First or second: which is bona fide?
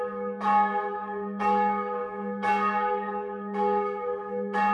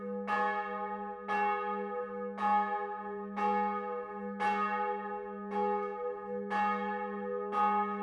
second